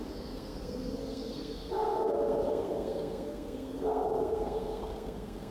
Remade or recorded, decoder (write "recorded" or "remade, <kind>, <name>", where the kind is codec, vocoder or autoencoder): remade, codec, SNAC